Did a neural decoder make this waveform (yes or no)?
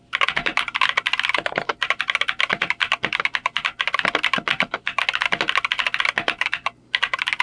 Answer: no